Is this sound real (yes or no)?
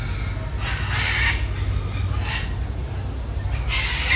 yes